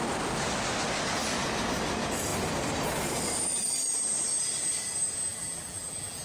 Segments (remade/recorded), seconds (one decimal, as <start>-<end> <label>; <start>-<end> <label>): 0.0-5.3 recorded; 5.3-6.2 remade